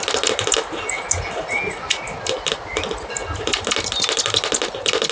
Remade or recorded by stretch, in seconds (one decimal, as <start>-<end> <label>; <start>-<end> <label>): 0.0-5.1 recorded